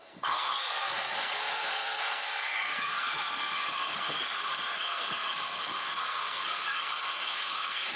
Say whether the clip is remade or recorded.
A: remade